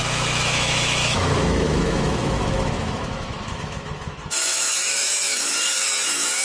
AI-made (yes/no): yes